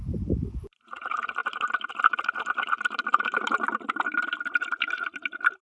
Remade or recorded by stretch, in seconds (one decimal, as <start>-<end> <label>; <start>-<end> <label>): 0.0-5.7 remade